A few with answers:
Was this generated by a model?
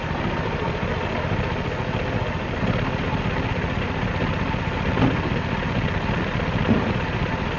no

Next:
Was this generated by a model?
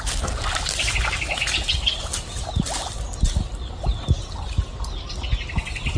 no